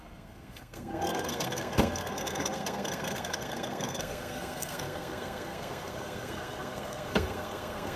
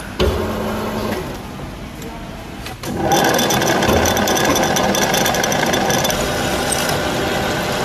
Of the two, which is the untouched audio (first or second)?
second